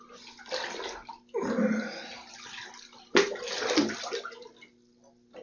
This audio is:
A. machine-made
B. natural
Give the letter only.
B